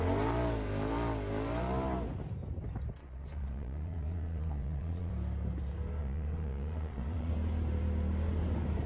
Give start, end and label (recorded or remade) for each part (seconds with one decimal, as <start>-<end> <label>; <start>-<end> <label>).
0.0-3.0 recorded; 3.0-5.1 remade; 5.1-6.0 recorded; 6.0-7.3 remade; 7.3-8.9 recorded